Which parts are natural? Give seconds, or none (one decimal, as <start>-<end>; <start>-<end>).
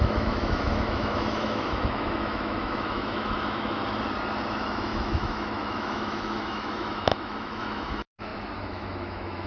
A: 3.8-4.5